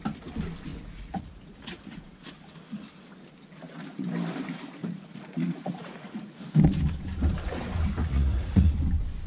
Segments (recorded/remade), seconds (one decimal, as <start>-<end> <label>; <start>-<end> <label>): 0.0-0.7 recorded; 0.7-2.3 remade; 2.3-4.8 recorded; 4.8-6.4 remade; 6.4-8.0 recorded; 8.0-8.7 remade; 8.7-9.3 recorded